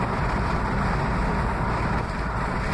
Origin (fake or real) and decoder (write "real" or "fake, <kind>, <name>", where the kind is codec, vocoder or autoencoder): real